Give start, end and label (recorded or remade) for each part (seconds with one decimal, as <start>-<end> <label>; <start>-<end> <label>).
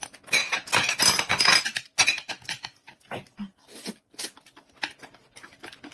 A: 0.0-5.9 recorded